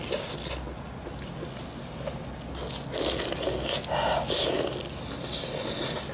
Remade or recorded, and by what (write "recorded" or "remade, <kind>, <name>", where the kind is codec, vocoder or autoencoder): recorded